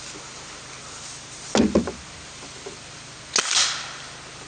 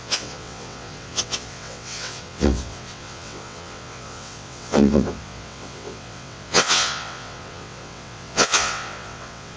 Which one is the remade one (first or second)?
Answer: second